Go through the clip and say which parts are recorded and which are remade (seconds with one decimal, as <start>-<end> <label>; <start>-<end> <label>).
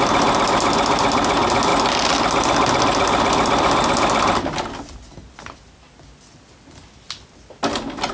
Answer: 0.0-8.1 recorded